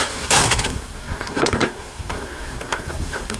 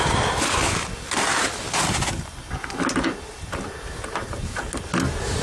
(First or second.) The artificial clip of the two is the first